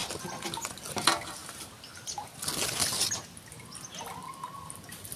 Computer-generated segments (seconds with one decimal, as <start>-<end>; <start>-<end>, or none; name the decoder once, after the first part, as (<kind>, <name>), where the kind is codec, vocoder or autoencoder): 0.9-1.4 (vocoder, BigVGAN v2); 3.5-5.2